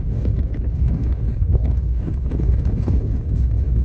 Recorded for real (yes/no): no